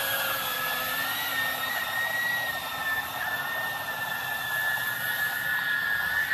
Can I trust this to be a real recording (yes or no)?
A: yes